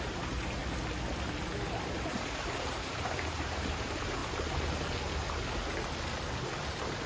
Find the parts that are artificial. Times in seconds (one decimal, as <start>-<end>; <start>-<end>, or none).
0.0-0.6; 1.9-4.2